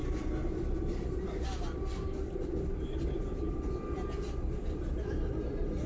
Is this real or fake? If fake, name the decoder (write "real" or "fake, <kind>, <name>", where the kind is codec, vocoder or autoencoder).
real